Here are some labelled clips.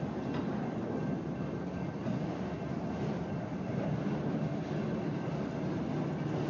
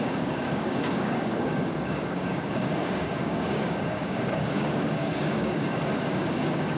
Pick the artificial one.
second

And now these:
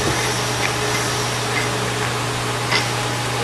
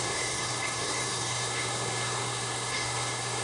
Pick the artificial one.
second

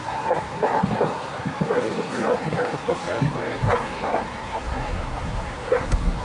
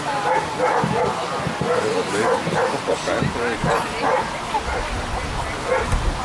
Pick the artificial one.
first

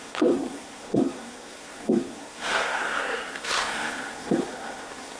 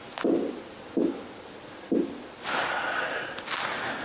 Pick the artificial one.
first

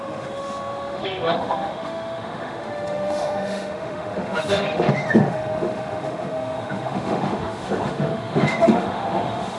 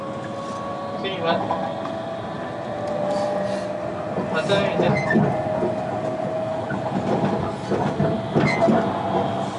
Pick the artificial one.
first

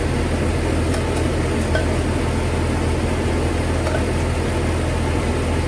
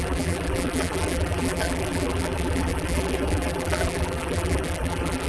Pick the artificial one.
second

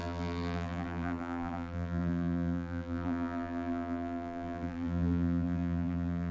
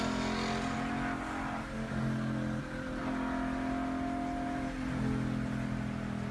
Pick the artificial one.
first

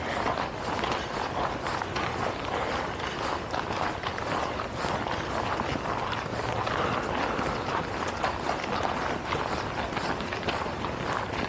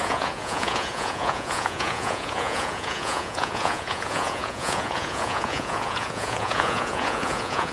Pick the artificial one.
second